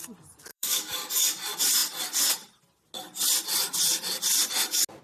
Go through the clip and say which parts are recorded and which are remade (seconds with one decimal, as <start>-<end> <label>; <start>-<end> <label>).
0.0-0.5 recorded; 0.5-1.1 remade; 1.1-5.0 recorded